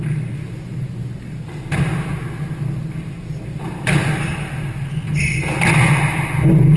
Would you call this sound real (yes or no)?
yes